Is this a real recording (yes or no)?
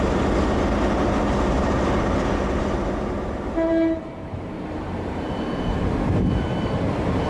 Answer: no